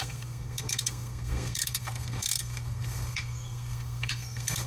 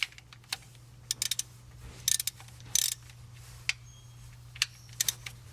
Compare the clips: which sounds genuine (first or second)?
second